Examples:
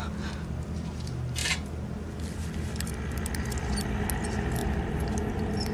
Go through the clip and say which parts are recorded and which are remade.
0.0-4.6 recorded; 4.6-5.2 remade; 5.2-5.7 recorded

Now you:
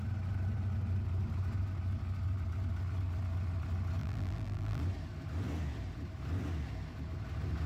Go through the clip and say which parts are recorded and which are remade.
0.0-4.0 recorded; 4.0-4.8 remade; 4.8-7.7 recorded

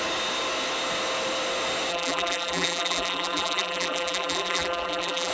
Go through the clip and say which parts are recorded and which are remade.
0.0-1.9 recorded; 1.9-5.3 remade

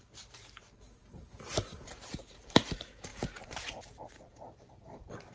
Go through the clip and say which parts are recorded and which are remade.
0.0-5.3 remade

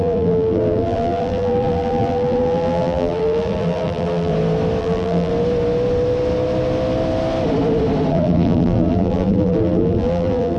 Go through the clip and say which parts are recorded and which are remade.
0.0-4.3 remade; 4.3-4.8 recorded; 4.8-5.3 remade; 5.3-8.1 recorded; 8.1-10.6 remade

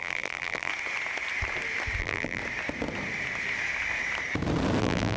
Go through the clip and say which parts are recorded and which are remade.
0.0-0.7 remade; 0.7-2.0 recorded; 2.0-2.4 remade; 2.4-4.8 recorded; 4.8-5.2 remade

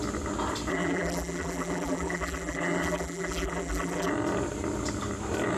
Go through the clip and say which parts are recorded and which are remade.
0.0-0.7 recorded; 0.7-4.1 remade; 4.1-5.6 recorded